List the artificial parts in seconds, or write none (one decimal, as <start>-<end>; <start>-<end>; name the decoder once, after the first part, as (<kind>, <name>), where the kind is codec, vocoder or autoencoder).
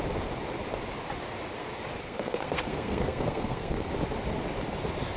2.0-3.9 (codec, SNAC)